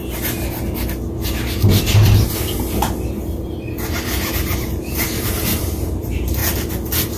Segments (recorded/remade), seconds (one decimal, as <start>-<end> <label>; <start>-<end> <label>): 0.0-4.3 recorded; 4.3-6.4 remade; 6.4-7.2 recorded